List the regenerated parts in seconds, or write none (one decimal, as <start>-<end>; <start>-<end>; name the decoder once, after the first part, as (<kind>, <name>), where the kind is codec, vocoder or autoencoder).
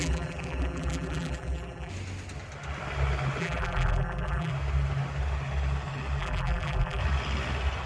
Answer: 0.0-1.9 (vocoder, BigVGAN v2); 3.4-4.5; 6.2-7.0